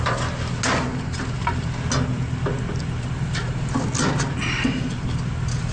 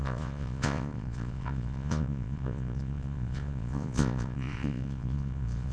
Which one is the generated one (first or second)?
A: second